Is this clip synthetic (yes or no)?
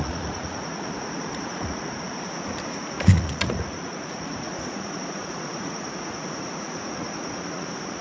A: yes